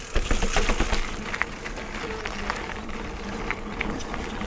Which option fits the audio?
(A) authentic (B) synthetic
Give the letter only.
A